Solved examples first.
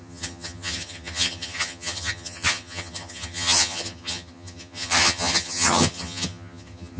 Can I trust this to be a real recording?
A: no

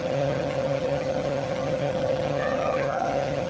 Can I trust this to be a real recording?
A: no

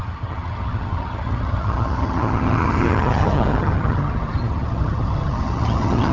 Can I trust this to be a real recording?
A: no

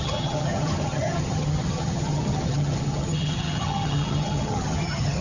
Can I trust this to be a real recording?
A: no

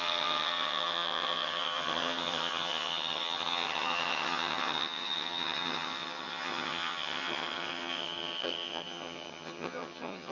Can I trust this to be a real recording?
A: no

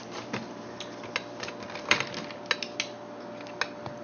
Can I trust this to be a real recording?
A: yes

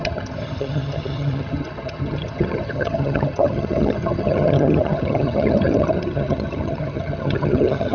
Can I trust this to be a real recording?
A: no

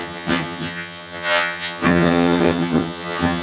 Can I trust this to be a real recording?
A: no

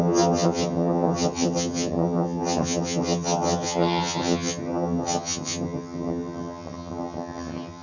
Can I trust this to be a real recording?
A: no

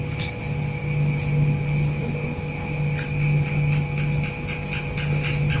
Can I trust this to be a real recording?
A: yes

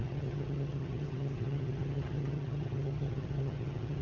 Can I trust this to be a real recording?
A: no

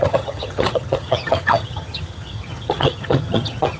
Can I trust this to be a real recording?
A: no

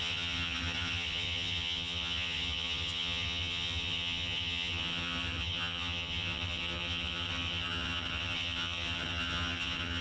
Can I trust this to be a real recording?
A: no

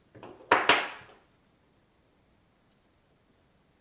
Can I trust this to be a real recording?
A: yes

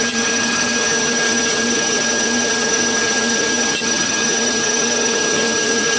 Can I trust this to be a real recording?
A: no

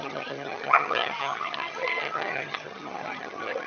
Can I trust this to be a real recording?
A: no